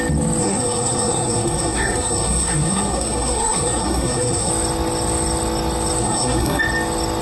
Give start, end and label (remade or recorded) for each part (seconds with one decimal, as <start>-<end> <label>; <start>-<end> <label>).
0.0-0.4 recorded; 0.4-4.5 remade; 4.5-6.0 recorded; 6.0-6.6 remade; 6.6-7.2 recorded